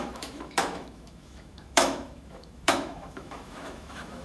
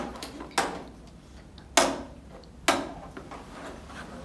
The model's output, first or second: first